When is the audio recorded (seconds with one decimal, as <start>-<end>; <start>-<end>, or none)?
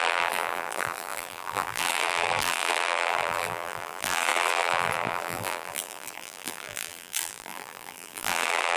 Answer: none